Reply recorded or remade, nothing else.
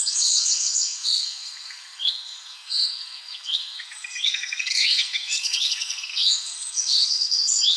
remade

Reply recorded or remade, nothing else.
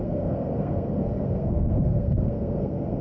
remade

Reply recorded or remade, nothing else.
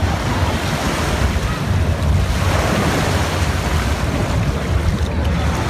recorded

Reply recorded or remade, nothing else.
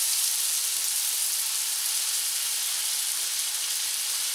recorded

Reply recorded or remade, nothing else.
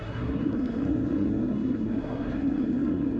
remade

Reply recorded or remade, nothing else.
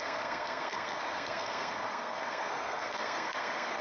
remade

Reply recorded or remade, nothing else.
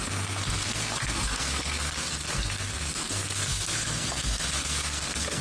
remade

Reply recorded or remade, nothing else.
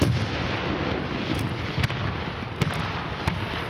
recorded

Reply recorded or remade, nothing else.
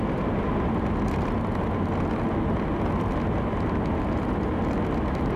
recorded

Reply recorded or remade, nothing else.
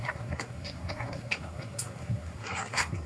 remade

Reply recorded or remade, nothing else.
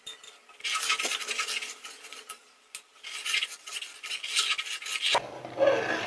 recorded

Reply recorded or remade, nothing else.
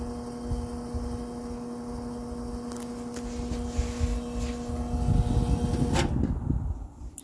recorded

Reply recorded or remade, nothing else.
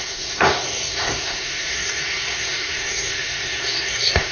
remade